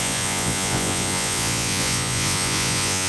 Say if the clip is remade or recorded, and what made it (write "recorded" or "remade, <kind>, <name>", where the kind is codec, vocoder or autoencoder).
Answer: remade, vocoder, Vocos